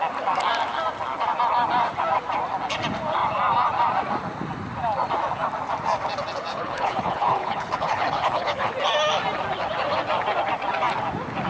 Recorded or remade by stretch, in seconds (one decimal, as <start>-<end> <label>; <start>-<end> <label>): 0.0-6.5 recorded; 6.5-8.7 remade; 8.7-11.5 recorded